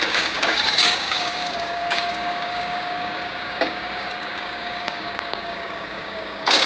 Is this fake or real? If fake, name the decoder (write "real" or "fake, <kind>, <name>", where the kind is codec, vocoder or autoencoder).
fake, codec, DAC